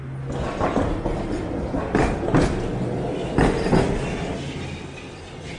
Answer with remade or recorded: recorded